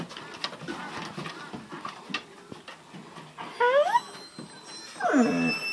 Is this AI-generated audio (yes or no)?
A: no